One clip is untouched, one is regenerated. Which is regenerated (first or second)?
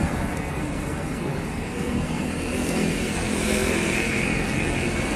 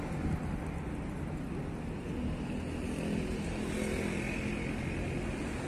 first